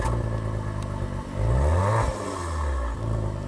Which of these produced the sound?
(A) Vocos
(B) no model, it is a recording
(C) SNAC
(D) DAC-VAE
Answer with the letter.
B